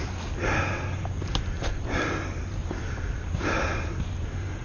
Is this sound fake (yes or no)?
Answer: no